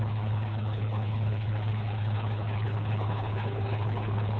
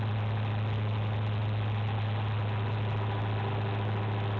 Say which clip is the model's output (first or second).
first